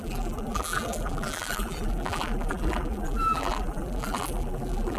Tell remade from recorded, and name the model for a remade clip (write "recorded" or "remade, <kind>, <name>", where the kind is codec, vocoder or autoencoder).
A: remade, vocoder, BigVGAN v2